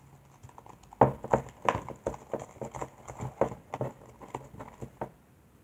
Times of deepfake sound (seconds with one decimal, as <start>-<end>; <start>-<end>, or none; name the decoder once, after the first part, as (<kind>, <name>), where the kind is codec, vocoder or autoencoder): none